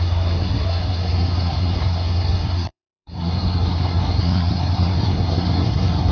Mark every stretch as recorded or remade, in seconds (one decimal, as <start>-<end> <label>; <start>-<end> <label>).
0.0-6.1 remade